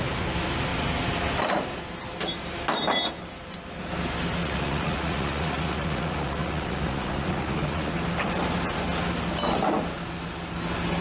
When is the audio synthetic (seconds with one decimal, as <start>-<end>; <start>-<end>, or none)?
4.4-7.9